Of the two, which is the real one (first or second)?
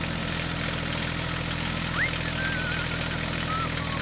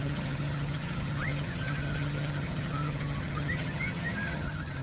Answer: first